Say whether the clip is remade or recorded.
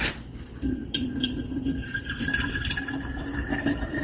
remade